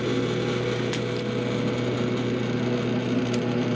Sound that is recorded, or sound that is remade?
recorded